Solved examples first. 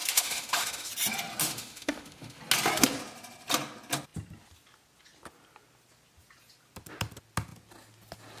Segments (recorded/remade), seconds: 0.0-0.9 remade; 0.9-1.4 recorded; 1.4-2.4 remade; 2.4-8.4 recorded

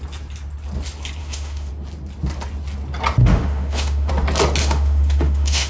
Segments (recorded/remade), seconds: 0.0-1.2 recorded; 1.2-1.7 remade; 1.7-3.2 recorded; 3.2-4.1 remade; 4.1-4.6 recorded; 4.6-5.7 remade